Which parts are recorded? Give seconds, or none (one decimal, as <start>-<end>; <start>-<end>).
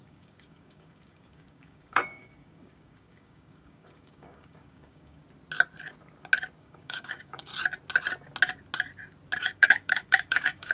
5.2-6.6; 7.5-9.4